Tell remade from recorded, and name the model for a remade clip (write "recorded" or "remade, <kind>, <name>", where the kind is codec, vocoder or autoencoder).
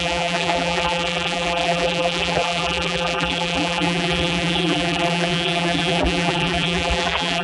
remade, vocoder, BigVGAN v2